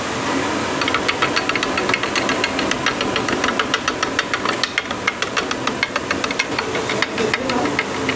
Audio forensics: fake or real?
real